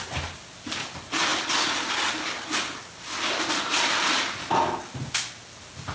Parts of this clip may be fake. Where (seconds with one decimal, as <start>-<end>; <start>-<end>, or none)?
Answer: none